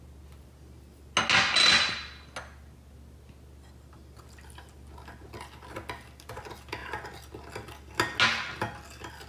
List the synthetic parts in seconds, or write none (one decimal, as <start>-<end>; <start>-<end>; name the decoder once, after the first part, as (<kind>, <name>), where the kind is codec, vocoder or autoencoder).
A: none